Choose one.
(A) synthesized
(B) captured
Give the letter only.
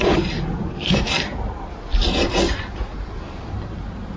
B